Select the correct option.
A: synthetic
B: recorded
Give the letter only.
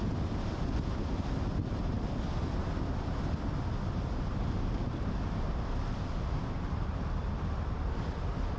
B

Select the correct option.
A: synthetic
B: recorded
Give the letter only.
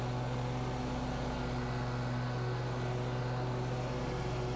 B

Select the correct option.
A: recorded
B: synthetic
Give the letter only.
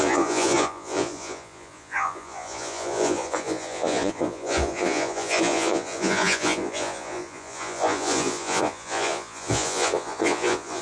B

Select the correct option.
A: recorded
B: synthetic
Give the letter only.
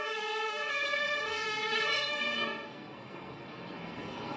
B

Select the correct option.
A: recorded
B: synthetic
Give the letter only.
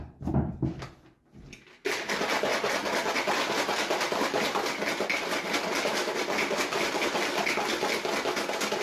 A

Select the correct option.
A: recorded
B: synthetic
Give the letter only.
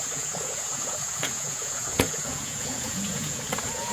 B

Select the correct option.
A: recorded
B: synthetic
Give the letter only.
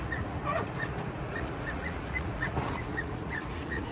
B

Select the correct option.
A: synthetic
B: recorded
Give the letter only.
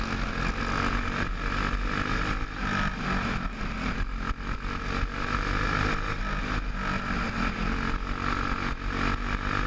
B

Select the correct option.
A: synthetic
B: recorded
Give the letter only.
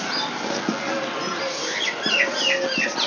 B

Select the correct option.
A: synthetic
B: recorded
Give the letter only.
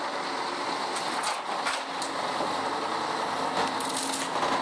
B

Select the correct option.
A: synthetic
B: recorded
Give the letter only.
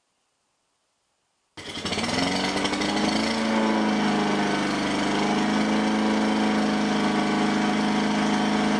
B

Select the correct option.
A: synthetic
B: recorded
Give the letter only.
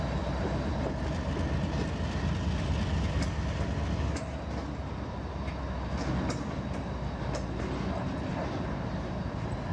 B